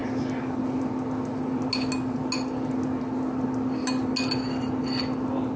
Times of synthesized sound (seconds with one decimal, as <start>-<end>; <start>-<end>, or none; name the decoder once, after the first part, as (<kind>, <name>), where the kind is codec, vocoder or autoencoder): none